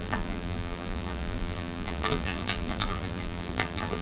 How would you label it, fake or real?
fake